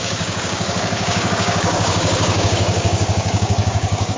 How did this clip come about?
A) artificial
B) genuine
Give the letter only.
A